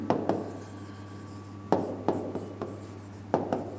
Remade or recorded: recorded